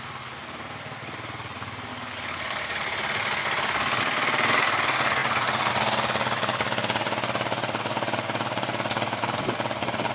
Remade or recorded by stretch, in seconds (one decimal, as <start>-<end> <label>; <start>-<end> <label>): 0.0-1.9 recorded; 1.9-2.6 remade; 2.6-3.4 recorded; 3.4-4.0 remade; 4.0-10.1 recorded